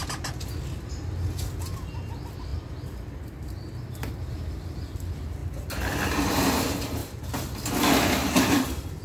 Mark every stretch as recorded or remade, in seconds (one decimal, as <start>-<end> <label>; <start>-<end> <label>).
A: 0.0-9.0 recorded